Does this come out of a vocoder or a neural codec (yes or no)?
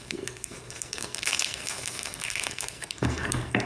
yes